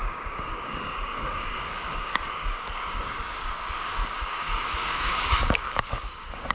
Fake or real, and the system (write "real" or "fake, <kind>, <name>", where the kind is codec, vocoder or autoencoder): fake, codec, DAC